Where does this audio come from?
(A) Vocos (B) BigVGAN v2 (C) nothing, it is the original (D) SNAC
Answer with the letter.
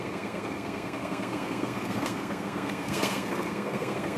D